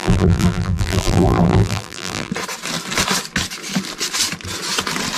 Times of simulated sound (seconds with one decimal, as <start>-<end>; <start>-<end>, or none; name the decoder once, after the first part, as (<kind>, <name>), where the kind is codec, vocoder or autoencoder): 0.0-2.3 (vocoder, BigVGAN v2)